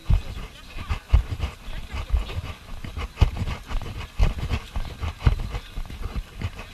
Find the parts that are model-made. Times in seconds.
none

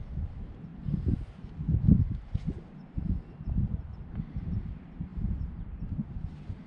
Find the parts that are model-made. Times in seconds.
0.0-0.7 (vocoder, BigVGAN v2); 3.5-6.7

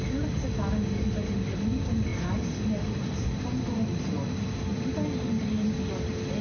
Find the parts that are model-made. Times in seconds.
none

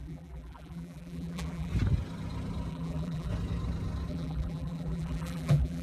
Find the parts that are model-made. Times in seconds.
0.0-1.7 (vocoder, BigVGAN v2); 2.7-3.3; 4.1-5.8

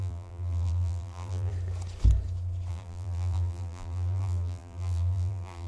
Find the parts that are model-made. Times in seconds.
0.0-1.5 (vocoder, BigVGAN v2); 2.7-5.7